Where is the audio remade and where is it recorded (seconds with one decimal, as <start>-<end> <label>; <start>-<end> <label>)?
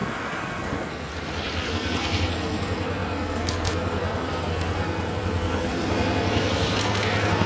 0.0-1.1 remade; 1.1-1.7 recorded; 1.7-7.5 remade